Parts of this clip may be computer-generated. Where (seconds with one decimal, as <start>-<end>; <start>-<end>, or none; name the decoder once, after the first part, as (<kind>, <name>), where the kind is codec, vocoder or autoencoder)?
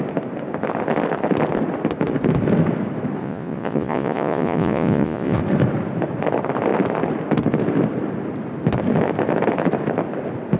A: 3.2-5.4 (vocoder, Vocos)